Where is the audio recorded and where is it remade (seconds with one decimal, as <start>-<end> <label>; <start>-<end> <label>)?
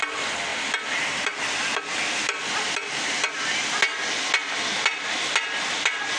0.0-6.2 recorded